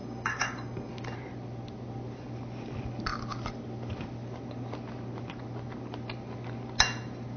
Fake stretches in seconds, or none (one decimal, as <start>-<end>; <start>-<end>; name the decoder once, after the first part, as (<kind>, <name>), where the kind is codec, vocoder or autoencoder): 0.0-0.9 (codec, DAC)